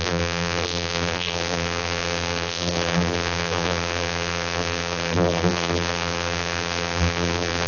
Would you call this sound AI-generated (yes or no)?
yes